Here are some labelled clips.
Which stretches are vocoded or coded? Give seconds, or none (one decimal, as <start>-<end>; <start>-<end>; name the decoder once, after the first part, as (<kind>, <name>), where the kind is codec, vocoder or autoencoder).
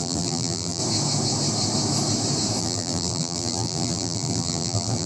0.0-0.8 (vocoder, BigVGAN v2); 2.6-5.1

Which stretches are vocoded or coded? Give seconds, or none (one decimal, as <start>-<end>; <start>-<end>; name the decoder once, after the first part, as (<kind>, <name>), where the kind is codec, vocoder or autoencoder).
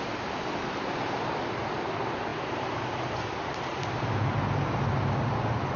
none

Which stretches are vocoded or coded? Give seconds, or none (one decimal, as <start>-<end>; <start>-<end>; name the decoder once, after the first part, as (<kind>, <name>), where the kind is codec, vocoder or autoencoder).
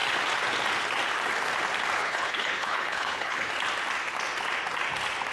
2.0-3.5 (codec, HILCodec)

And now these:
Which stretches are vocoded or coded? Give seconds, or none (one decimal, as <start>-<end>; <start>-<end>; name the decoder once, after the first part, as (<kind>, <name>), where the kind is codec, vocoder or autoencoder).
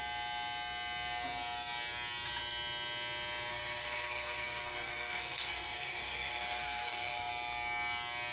3.5-7.3 (codec, SNAC)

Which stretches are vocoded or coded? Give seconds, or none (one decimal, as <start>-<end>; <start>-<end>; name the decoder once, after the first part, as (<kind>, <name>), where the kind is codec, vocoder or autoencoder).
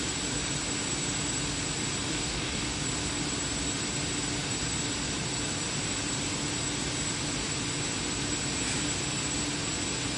2.1-2.8 (codec, DAC)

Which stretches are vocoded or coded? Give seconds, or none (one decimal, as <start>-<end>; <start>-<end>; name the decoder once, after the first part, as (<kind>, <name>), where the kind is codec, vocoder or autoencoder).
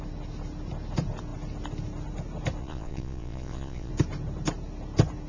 2.6-3.9 (vocoder, Vocos)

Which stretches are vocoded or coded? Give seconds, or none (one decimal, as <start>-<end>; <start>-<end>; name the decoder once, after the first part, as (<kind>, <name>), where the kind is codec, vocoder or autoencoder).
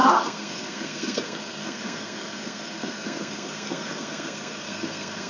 0.0-5.3 (codec, SNAC)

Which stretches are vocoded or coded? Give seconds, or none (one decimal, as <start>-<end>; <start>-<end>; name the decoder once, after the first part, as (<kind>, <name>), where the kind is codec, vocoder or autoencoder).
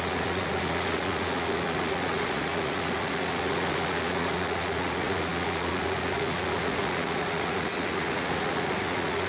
0.0-9.3 (vocoder, Vocos)